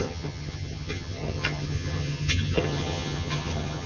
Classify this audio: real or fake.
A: fake